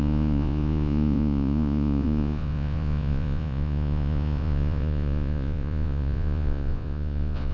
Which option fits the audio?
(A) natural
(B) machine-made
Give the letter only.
B